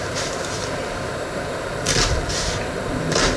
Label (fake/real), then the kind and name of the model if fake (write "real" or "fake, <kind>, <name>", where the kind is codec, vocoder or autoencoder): fake, vocoder, BigVGAN v2